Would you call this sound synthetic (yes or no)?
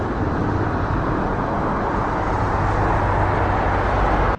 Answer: no